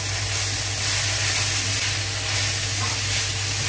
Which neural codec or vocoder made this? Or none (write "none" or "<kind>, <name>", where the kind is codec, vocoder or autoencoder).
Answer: none